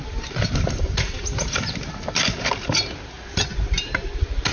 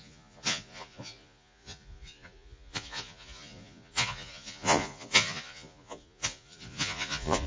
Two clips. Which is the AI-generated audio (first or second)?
second